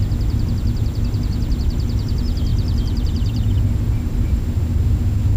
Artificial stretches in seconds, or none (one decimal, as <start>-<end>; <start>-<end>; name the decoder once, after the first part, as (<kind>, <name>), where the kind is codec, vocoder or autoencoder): 2.5-4.4 (vocoder, BigVGAN v2)